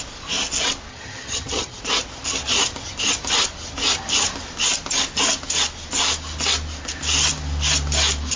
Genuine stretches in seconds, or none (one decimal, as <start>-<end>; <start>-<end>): 0.0-0.9; 1.8-8.4